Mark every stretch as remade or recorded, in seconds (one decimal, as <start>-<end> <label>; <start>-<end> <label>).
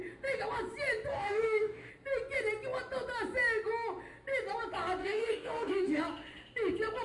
0.0-1.1 recorded; 1.1-1.9 remade; 1.9-5.0 recorded; 5.0-6.0 remade; 6.0-7.0 recorded